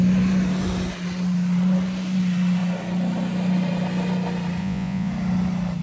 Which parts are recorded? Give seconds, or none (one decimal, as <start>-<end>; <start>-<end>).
0.0-4.6; 5.1-5.8